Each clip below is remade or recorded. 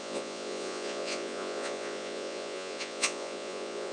remade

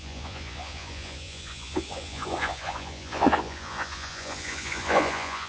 remade